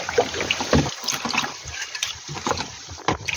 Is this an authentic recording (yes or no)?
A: no